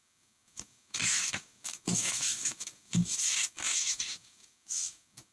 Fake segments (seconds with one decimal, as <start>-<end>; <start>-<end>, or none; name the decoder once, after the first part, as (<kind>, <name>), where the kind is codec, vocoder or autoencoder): 0.0-5.3 (codec, DAC)